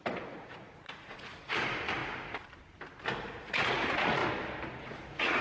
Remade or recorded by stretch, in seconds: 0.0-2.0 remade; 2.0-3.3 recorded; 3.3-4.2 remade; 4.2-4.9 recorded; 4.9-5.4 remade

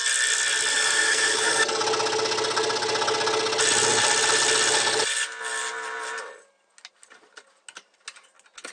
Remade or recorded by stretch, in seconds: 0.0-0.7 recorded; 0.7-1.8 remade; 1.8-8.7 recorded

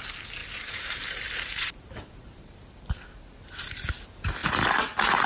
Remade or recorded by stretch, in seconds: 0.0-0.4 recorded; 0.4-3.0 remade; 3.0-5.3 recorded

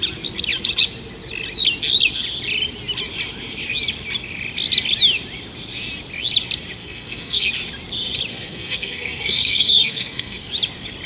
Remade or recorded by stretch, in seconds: 0.0-6.8 recorded; 6.8-7.5 remade; 7.5-8.3 recorded; 8.3-10.5 remade; 10.5-11.1 recorded

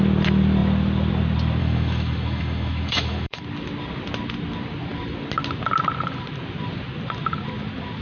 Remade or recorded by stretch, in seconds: 0.0-1.6 recorded; 1.6-3.4 remade; 3.4-8.0 recorded